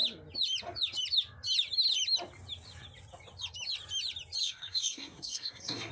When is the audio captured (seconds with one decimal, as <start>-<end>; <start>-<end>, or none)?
0.0-4.4